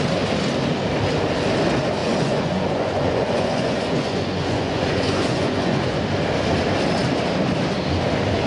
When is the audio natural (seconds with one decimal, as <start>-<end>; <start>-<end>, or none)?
0.0-2.0; 6.0-8.5